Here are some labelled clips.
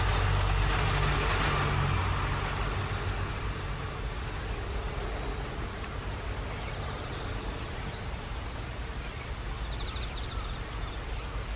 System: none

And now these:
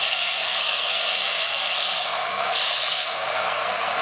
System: codec, SNAC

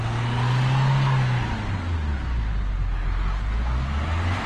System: none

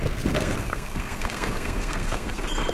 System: codec, SNAC